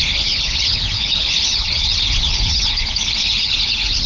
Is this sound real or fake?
fake